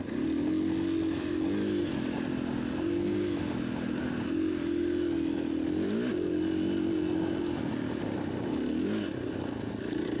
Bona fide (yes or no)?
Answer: yes